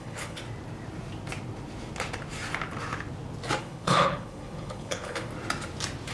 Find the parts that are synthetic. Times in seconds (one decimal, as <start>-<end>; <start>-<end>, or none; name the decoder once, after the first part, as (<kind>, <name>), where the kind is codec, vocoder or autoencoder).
0.0-0.4 (codec, HILCodec); 3.6-5.3